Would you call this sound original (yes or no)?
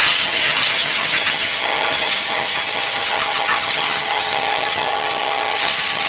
no